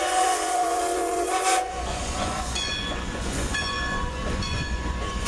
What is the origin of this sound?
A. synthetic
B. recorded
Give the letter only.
A